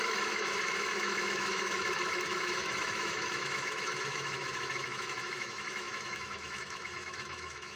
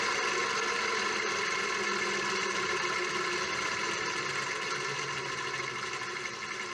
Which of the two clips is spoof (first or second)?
first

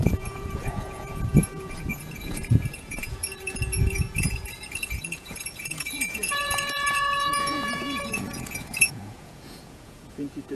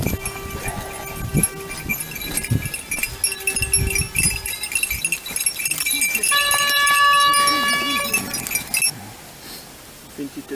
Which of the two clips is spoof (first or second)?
first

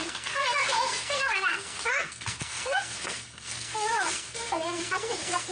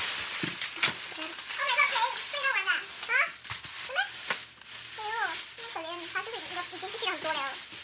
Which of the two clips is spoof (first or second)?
first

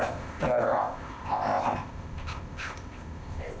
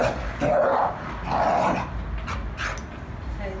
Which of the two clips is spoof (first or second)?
first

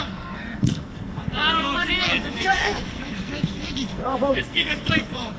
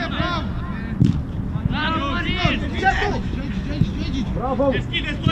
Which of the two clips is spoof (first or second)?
first